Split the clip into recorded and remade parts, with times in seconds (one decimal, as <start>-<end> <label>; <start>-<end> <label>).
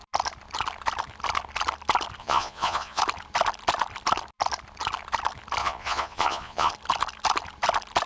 0.0-2.2 recorded; 2.2-3.0 remade; 3.0-5.6 recorded; 5.6-6.7 remade; 6.7-8.1 recorded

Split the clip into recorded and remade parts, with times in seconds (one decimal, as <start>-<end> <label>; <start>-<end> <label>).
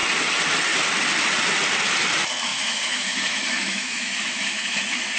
0.0-2.5 recorded; 2.5-4.8 remade; 4.8-5.2 recorded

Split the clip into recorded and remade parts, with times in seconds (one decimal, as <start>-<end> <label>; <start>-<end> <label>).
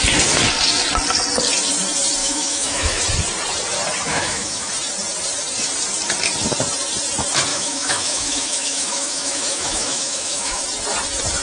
0.0-2.2 recorded; 2.2-3.0 remade; 3.0-4.1 recorded; 4.1-4.7 remade; 4.7-7.5 recorded; 7.5-10.6 remade; 10.6-11.4 recorded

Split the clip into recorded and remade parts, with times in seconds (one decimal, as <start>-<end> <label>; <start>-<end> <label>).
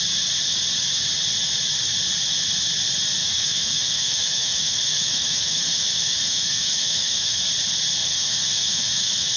0.0-3.2 recorded; 3.2-7.4 remade; 7.4-8.0 recorded; 8.0-9.4 remade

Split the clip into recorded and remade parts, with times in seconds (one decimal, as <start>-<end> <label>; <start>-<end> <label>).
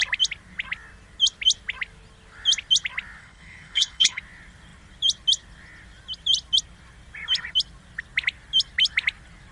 0.0-3.2 recorded; 3.2-4.2 remade; 4.2-9.5 recorded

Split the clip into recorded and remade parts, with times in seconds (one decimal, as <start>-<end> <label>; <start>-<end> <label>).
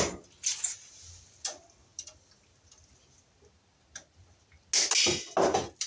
0.0-5.9 recorded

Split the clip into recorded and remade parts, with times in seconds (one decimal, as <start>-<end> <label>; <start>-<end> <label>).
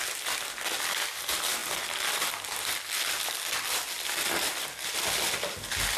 0.0-6.0 recorded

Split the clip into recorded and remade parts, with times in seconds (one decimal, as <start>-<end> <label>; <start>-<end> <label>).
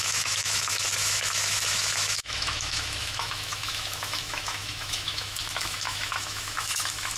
0.0-7.2 remade